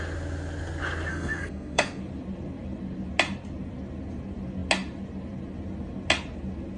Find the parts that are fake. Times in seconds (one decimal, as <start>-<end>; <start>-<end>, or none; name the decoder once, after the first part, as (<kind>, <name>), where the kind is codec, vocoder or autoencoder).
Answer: 1.1-2.0 (codec, SNAC)